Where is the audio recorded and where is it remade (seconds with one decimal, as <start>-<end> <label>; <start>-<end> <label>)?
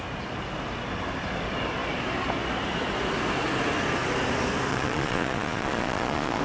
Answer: 0.0-4.7 recorded; 4.7-6.4 remade